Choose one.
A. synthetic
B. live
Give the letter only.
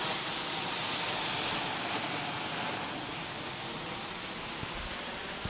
B